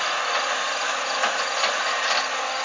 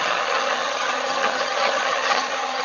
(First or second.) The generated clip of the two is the second